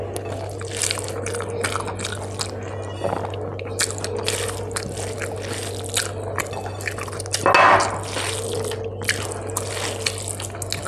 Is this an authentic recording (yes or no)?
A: yes